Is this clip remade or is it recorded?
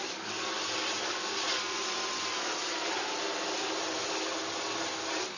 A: recorded